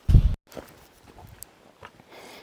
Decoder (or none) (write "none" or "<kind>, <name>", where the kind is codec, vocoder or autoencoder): none